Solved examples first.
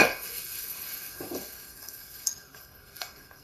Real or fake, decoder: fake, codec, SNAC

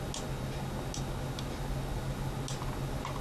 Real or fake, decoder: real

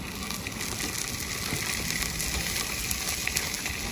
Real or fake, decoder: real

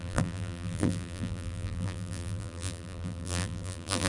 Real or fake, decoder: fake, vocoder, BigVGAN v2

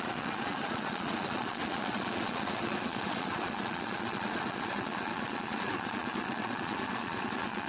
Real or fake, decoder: fake, vocoder, Vocos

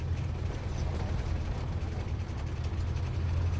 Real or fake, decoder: real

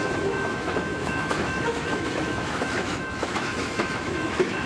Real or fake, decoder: fake, autoencoder, DAC-VAE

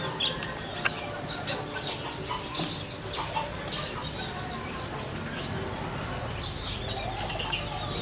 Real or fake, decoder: real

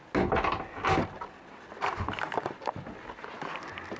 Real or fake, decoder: real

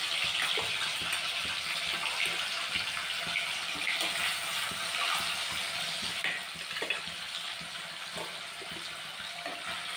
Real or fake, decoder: real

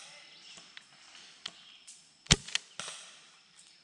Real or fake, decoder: real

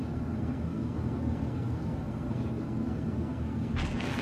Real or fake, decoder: fake, codec, SNAC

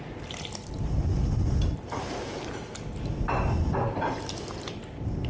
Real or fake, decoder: real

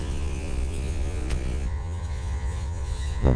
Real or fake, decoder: fake, vocoder, Vocos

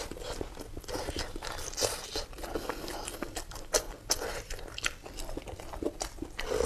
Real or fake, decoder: real